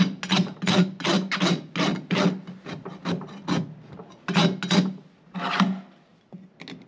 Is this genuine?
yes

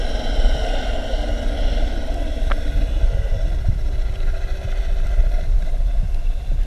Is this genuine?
yes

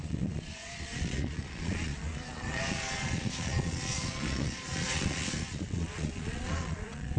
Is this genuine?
no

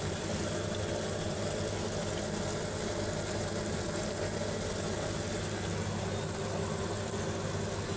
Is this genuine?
yes